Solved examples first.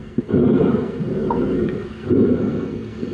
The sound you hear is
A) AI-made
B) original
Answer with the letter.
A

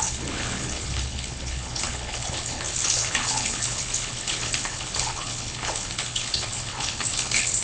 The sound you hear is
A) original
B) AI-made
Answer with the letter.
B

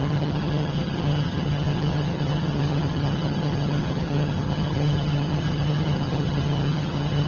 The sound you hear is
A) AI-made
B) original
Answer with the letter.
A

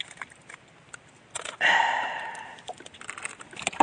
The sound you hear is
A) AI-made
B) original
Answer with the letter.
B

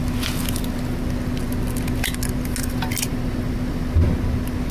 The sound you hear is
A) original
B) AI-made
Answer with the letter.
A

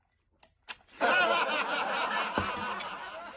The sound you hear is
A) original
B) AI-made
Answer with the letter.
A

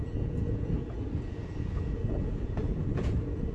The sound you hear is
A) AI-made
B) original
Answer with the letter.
A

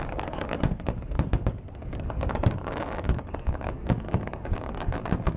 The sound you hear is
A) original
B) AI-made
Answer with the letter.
B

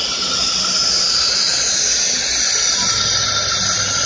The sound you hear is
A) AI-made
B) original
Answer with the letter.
B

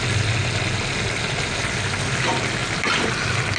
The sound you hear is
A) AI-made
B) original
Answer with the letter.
B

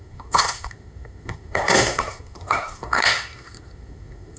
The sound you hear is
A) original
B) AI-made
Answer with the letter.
B